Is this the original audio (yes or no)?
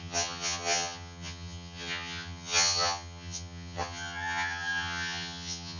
no